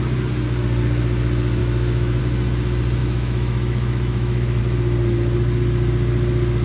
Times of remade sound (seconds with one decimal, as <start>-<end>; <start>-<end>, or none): 1.6-2.2; 3.0-4.6